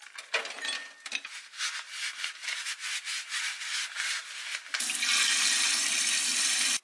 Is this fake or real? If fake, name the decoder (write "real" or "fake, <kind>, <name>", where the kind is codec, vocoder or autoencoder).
real